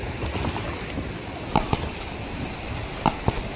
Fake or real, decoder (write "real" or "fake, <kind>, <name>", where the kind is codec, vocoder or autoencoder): real